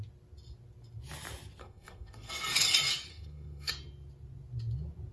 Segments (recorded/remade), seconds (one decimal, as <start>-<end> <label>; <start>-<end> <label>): 0.0-1.6 recorded; 1.6-2.3 remade; 2.3-3.1 recorded; 3.1-3.7 remade; 3.7-5.1 recorded

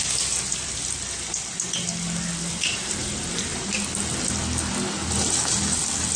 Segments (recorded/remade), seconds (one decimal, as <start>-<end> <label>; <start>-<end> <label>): 0.0-6.2 recorded